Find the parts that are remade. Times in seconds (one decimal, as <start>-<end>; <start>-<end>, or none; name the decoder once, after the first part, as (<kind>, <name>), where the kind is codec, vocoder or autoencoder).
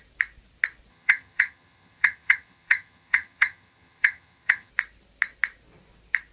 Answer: 0.9-4.7 (vocoder, HiFi-GAN)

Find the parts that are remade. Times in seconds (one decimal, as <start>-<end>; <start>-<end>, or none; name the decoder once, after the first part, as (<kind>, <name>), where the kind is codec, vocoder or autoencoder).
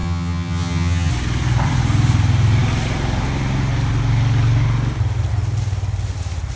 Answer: 0.0-1.1 (vocoder, HiFi-GAN)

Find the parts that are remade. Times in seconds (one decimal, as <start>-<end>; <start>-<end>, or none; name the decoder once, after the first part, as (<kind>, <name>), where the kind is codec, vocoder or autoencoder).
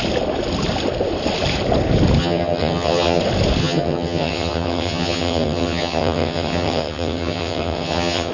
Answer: 2.2-3.2 (vocoder, HiFi-GAN); 3.6-8.3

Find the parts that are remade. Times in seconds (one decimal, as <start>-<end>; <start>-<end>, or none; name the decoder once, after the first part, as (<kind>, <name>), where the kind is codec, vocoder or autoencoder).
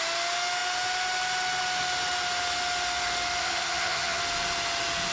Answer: 3.4-4.2 (vocoder, HiFi-GAN)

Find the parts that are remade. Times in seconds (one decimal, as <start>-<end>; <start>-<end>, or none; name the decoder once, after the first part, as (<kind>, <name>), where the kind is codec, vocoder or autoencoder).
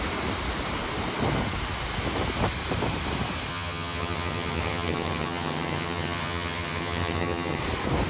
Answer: 3.5-7.6 (vocoder, HiFi-GAN)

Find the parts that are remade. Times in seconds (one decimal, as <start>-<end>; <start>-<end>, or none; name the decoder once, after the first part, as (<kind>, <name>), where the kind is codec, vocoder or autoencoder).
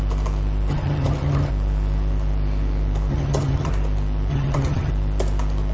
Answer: 0.7-1.5 (vocoder, HiFi-GAN); 3.1-3.7; 4.3-4.9